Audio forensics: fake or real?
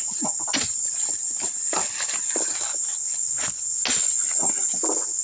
real